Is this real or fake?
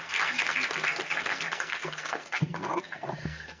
fake